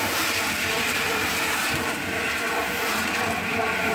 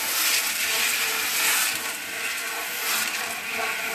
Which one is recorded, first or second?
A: second